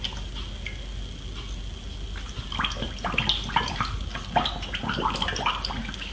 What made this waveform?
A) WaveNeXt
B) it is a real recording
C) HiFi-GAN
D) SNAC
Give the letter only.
B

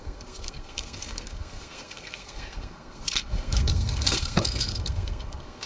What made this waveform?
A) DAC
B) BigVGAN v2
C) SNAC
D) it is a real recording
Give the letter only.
C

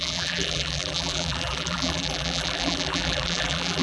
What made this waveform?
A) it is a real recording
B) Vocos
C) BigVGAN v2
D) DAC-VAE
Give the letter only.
C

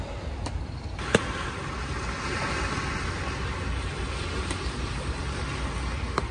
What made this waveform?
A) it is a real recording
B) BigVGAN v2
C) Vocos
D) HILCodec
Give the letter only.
A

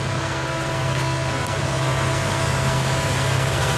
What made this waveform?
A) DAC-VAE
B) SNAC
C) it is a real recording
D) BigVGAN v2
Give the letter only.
B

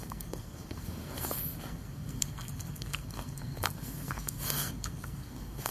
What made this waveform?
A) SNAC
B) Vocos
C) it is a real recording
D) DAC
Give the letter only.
A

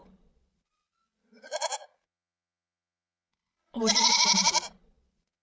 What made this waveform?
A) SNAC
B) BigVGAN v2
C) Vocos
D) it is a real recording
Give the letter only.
C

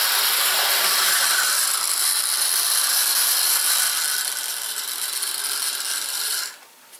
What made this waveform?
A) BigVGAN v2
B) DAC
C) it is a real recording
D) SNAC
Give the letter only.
A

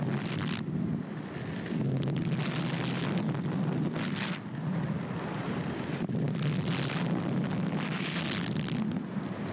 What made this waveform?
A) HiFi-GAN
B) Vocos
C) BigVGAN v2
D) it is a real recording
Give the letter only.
D